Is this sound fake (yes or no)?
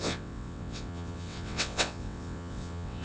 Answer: yes